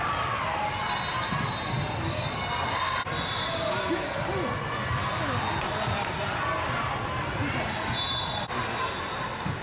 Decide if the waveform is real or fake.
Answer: real